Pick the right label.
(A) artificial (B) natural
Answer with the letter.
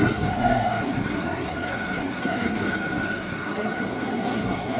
A